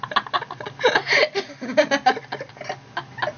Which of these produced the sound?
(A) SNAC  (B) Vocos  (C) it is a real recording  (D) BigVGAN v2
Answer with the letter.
C